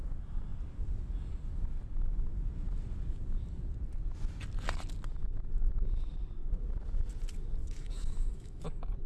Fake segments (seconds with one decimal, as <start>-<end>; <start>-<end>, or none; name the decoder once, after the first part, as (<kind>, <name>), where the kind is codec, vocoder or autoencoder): 7.6-8.6 (autoencoder, DAC-VAE)